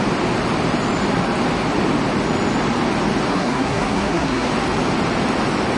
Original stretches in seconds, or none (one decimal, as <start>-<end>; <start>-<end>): 0.0-3.3; 4.5-5.8